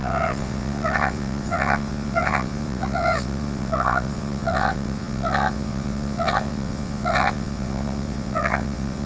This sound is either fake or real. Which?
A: fake